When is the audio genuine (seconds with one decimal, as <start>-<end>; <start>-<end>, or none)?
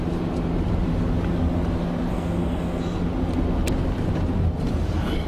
0.0-2.1; 2.8-5.3